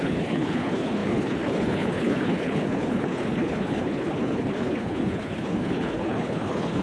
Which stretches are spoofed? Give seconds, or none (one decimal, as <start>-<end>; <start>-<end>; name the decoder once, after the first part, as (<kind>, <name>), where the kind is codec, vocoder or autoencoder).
0.0-6.8 (codec, HILCodec)